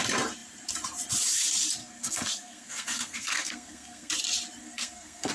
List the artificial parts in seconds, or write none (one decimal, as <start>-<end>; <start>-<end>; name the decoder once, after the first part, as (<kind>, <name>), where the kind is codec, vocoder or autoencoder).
1.8-4.1 (codec, SNAC); 4.6-5.3